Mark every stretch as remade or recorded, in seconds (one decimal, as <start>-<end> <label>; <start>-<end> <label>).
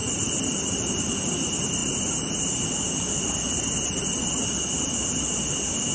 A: 0.0-5.9 recorded